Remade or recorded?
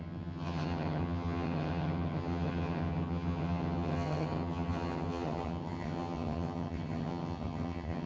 remade